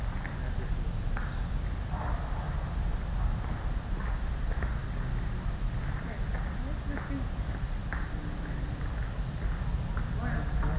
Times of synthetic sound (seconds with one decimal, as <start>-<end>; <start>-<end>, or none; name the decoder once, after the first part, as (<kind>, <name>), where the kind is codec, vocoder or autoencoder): none